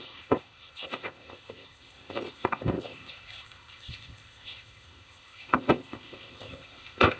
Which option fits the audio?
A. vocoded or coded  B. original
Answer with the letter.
A